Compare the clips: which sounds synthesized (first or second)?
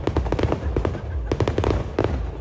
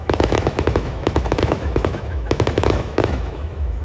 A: second